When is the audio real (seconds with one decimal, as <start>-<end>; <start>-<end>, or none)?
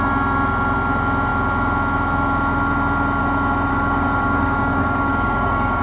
0.0-3.7